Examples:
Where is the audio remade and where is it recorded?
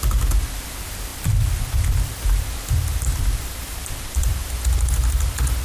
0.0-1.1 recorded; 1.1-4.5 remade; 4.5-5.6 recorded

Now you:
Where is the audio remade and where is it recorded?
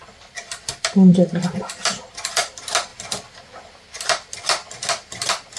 0.0-2.9 remade; 2.9-3.6 recorded; 3.6-5.6 remade